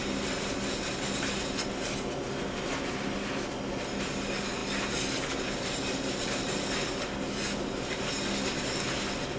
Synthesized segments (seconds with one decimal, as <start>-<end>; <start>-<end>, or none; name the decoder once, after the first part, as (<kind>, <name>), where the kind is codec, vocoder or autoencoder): none